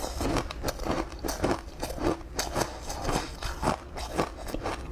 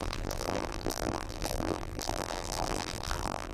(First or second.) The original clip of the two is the first